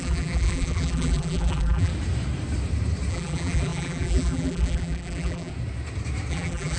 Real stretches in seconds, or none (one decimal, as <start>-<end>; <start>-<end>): 1.9-3.1; 5.5-6.3